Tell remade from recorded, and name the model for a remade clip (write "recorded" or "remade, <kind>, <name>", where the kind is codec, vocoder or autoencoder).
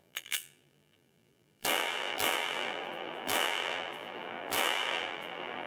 remade, vocoder, BigVGAN v2